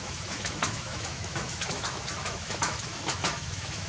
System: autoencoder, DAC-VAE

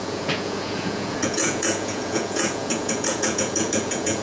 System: vocoder, Vocos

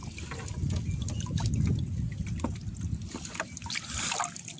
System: none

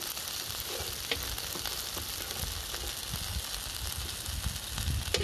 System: none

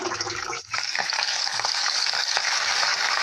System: codec, DAC